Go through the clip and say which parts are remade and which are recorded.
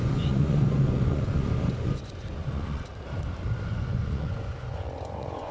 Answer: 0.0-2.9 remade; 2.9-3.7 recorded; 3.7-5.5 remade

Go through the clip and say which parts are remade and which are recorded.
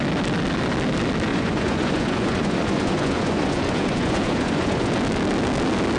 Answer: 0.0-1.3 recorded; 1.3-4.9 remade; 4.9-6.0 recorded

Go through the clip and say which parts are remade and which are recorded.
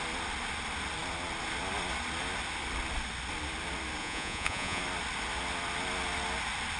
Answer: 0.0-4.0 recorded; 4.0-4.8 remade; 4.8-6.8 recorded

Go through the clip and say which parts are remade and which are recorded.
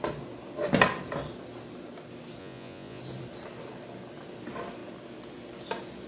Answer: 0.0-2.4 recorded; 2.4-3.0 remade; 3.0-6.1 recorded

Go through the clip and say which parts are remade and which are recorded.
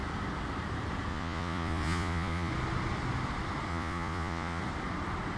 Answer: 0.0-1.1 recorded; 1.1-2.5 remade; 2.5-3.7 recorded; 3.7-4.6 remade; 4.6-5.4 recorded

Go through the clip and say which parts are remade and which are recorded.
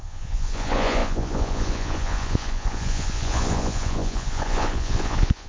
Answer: 0.0-5.5 remade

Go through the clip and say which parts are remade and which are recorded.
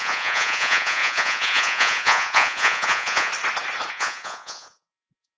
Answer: 0.0-3.3 remade; 3.3-3.9 recorded; 3.9-5.4 remade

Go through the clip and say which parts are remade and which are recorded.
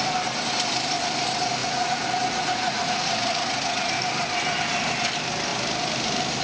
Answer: 0.0-1.6 recorded; 1.6-4.0 remade; 4.0-6.4 recorded